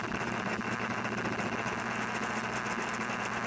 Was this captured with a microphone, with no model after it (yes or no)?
yes